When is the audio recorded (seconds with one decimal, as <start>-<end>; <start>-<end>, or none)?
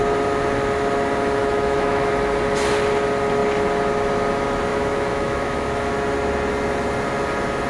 0.0-1.4; 2.1-4.7; 5.9-7.7